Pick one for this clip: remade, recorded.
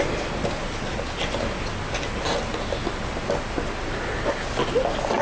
recorded